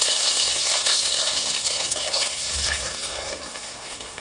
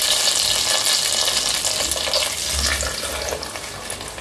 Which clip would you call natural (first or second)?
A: second